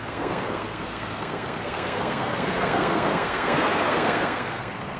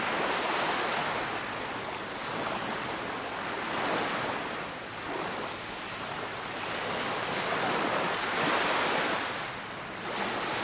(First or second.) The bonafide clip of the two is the second